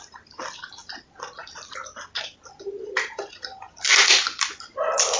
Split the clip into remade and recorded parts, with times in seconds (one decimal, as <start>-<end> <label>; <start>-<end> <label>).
0.0-5.2 recorded